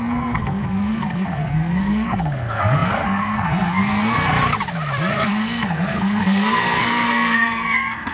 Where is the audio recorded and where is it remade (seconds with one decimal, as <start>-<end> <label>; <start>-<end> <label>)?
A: 0.0-4.3 remade; 4.3-5.1 recorded; 5.1-8.1 remade